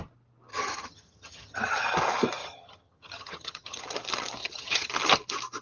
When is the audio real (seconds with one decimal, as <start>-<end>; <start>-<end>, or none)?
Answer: 0.0-0.5; 1.8-2.4; 3.8-4.4; 4.9-5.6